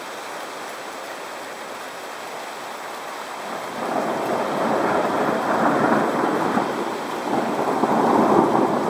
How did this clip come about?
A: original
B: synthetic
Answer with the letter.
A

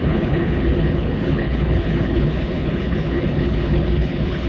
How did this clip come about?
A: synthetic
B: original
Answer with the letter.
A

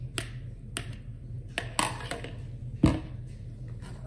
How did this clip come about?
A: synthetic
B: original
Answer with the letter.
B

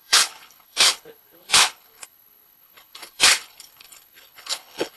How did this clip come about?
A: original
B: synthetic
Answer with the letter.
B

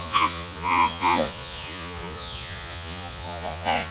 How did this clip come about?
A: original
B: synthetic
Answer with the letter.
B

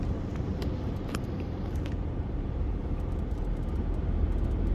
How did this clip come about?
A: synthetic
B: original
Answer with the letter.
A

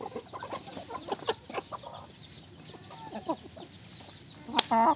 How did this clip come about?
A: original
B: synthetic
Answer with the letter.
A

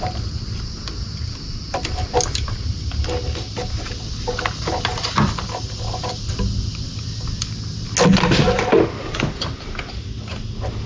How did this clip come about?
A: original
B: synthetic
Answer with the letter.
A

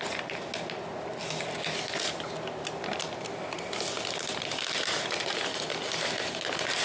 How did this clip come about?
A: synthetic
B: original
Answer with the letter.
B